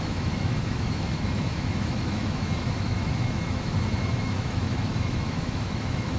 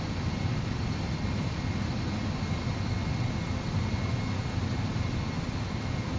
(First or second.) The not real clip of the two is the first